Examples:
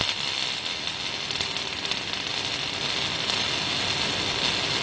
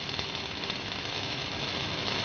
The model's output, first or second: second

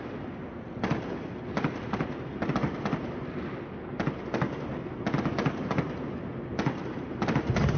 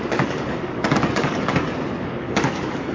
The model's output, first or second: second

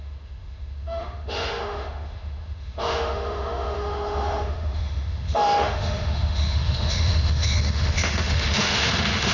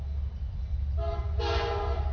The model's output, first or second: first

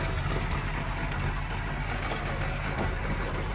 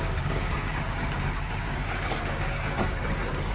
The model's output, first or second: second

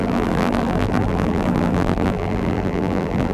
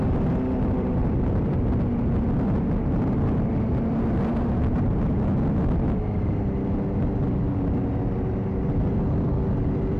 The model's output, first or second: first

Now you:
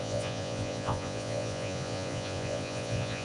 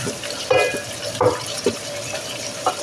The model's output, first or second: first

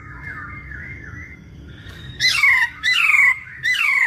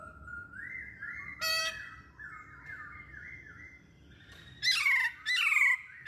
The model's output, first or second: first